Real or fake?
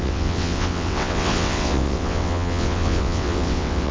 fake